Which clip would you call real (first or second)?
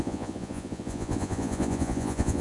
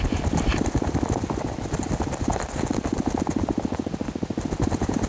second